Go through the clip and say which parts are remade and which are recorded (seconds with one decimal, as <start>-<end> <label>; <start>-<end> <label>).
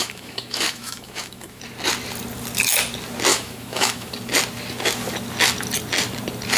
0.0-1.6 remade; 1.6-3.3 recorded; 3.3-4.1 remade; 4.1-6.6 recorded